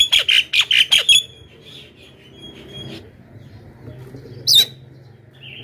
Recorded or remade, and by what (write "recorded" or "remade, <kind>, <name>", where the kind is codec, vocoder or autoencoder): recorded